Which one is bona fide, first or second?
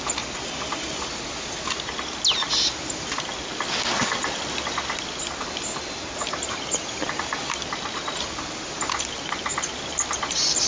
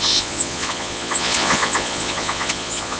first